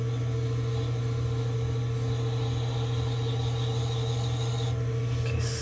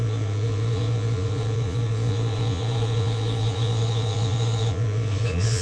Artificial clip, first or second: second